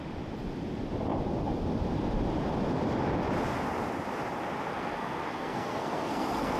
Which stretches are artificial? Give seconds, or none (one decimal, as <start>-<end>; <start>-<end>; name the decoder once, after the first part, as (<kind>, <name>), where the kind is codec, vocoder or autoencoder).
4.7-6.6 (codec, SNAC)